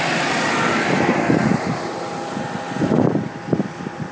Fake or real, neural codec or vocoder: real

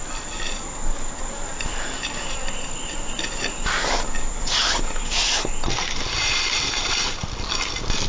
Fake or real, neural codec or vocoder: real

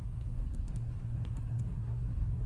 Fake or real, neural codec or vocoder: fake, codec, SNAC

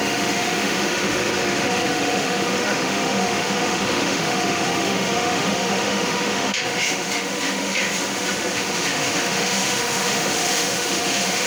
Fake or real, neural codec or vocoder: fake, autoencoder, DAC-VAE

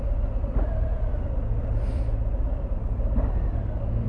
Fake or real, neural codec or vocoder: fake, vocoder, BigVGAN v2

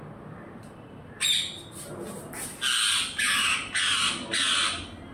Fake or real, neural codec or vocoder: real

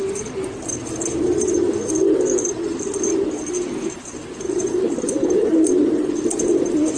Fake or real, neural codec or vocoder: real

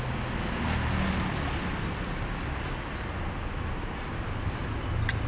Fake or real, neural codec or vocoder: real